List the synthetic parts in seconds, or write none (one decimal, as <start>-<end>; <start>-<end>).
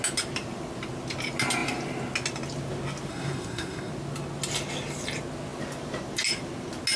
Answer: 3.1-3.9